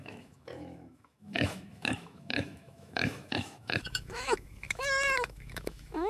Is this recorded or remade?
remade